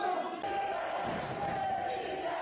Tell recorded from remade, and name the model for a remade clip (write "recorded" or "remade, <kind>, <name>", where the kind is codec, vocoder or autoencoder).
recorded